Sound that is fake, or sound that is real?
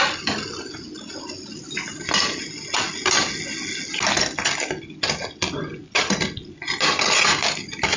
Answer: real